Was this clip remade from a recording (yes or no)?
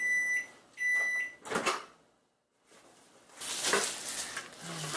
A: no